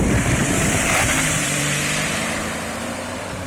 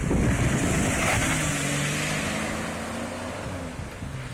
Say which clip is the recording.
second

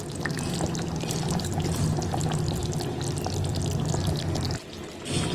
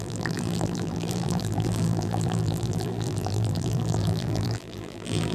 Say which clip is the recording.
first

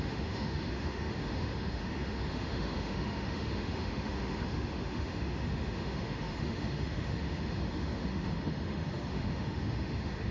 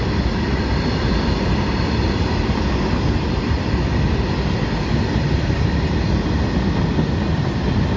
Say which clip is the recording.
second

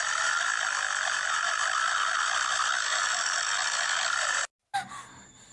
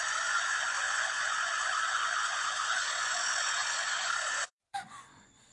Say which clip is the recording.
first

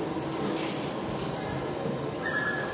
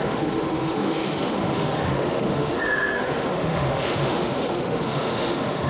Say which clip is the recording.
first